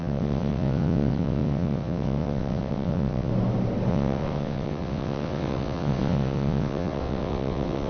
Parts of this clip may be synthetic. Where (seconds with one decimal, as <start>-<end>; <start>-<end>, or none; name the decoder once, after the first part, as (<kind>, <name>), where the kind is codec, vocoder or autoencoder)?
0.0-3.3 (vocoder, WaveNeXt); 3.9-7.9